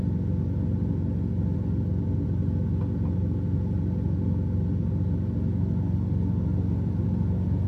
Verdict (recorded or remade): recorded